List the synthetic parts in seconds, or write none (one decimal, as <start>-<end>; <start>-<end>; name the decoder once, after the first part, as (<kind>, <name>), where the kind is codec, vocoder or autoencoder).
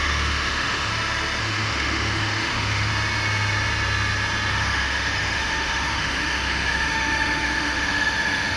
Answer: 0.0-0.9 (autoencoder, DAC-VAE); 1.4-2.9; 4.5-8.6